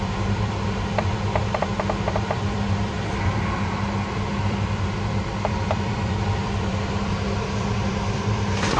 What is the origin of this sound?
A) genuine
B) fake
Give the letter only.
B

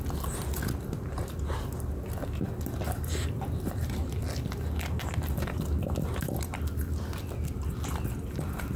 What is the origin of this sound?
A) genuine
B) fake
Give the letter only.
A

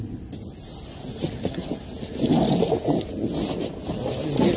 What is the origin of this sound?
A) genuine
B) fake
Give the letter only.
A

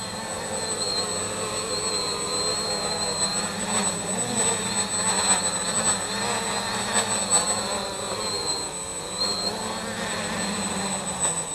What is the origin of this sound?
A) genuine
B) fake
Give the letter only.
A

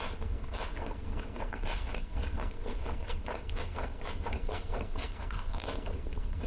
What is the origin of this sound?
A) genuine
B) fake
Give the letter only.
B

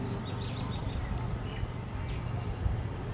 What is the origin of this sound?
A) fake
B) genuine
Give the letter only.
B